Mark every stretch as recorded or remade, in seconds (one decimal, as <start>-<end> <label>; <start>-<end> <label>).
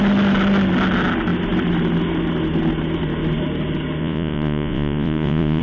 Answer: 0.0-4.0 recorded; 4.0-5.6 remade